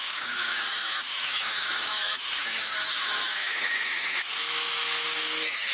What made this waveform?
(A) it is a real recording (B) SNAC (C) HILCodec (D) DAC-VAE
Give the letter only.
D